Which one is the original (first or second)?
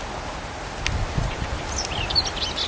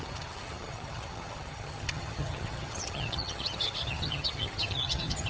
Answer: first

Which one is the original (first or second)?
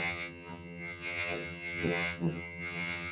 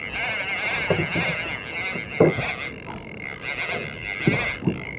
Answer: second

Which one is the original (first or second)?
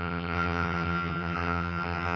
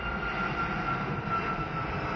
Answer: second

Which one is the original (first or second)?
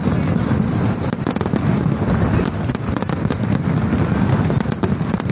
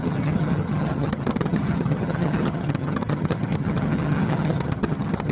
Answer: first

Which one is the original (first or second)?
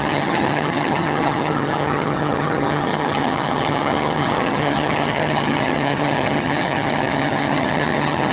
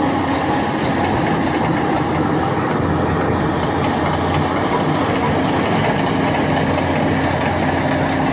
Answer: second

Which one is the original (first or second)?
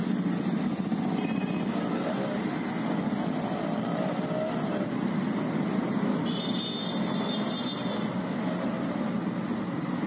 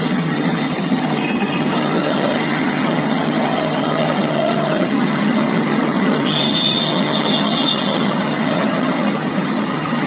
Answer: first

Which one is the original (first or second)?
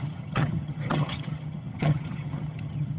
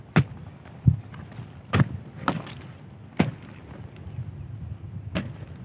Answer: second